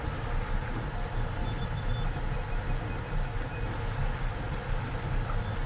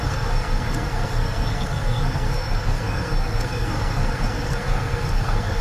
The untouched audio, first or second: first